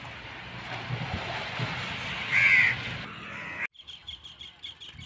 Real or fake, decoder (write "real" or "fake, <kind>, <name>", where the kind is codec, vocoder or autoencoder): real